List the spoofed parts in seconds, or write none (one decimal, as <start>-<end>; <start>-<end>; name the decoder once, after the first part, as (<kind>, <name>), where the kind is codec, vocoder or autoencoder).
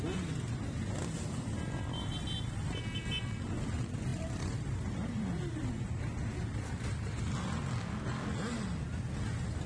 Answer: 4.1-6.0 (vocoder, BigVGAN v2)